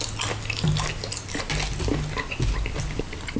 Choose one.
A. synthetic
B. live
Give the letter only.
B